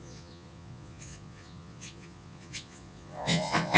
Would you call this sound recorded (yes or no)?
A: no